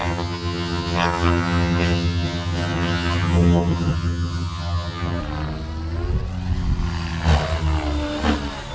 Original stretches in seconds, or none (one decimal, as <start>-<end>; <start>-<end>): 5.2-8.7